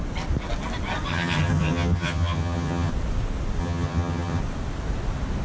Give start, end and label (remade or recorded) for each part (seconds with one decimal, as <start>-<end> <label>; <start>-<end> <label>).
0.0-1.1 recorded; 1.1-2.9 remade; 2.9-3.6 recorded; 3.6-4.4 remade; 4.4-5.4 recorded